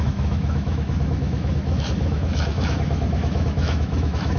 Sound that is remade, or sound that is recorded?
remade